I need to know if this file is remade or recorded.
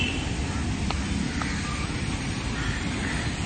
recorded